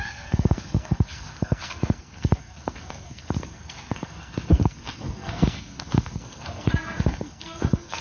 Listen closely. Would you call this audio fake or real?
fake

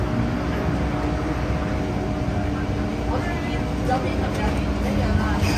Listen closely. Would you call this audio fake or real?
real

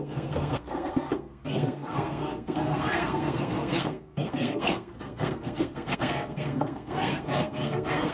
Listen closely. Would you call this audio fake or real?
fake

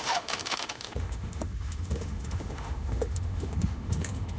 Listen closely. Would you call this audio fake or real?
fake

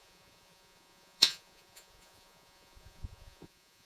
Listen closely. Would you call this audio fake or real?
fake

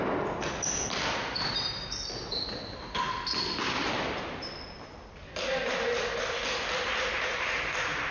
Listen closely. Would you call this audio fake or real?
real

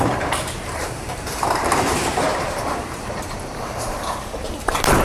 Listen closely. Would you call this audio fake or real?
fake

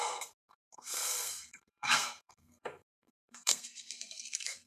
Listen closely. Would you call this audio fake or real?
fake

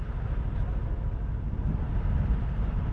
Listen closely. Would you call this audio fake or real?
real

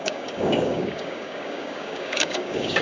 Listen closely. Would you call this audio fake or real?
fake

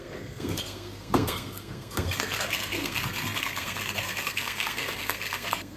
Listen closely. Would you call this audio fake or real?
fake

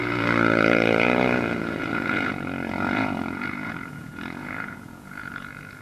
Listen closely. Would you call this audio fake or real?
fake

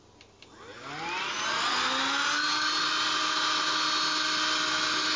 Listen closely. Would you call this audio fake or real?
real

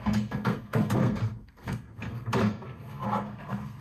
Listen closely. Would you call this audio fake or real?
fake